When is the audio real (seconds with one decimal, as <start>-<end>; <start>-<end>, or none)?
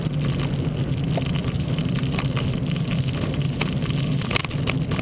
0.0-1.4; 4.4-5.0